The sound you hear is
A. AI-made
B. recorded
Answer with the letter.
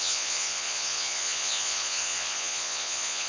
A